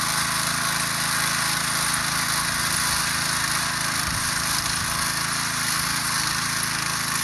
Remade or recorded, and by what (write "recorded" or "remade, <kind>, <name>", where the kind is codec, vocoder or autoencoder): recorded